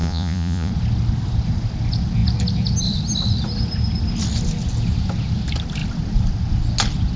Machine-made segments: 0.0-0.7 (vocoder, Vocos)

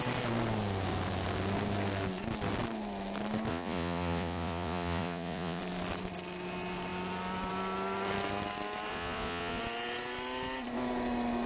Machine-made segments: 3.5-5.6 (vocoder, Vocos); 8.9-9.6

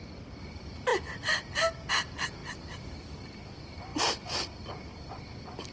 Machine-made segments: none

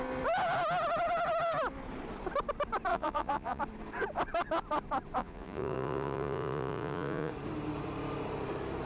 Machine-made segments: 2.9-3.6 (vocoder, Vocos); 5.2-7.3

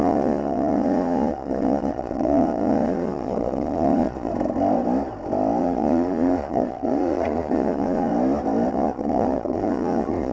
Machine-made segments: 0.0-4.3 (vocoder, Vocos); 5.6-8.1; 8.7-10.3